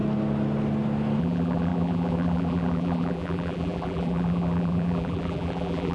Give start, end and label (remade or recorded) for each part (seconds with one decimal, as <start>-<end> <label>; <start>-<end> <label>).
0.0-1.2 recorded; 1.2-5.9 remade